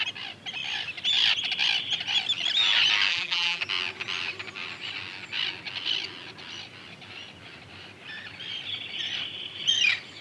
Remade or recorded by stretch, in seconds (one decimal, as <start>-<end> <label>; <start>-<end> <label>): 0.0-3.1 recorded; 3.1-3.6 remade; 3.6-10.2 recorded

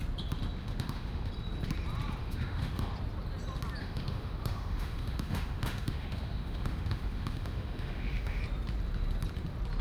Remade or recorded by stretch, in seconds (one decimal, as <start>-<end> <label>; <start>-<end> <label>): 0.0-0.6 recorded; 0.6-1.3 remade; 1.3-2.2 recorded; 2.2-2.9 remade; 2.9-3.8 recorded; 3.8-8.4 remade; 8.4-9.8 recorded

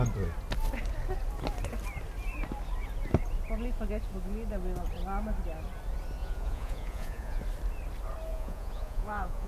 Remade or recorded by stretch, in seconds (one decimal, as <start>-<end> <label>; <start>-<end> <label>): 0.0-6.2 recorded; 6.2-7.4 remade; 7.4-8.3 recorded; 8.3-9.5 remade